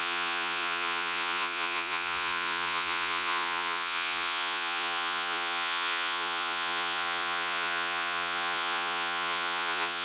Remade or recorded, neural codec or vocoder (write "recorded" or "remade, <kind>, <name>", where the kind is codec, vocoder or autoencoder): remade, vocoder, Vocos